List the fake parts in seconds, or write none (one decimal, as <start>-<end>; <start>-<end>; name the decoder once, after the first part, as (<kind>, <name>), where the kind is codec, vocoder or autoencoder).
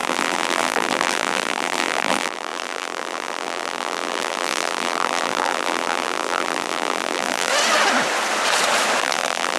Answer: 0.0-7.5 (vocoder, BigVGAN v2); 9.0-9.6